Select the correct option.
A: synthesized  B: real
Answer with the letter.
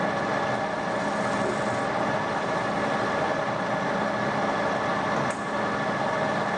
B